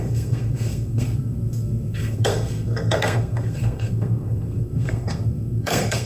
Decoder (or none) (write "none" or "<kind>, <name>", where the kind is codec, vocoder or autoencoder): codec, SNAC